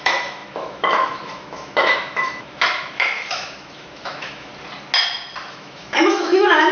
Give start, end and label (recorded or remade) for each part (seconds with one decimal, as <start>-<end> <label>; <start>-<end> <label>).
0.0-4.5 remade; 4.5-5.5 recorded; 5.5-6.7 remade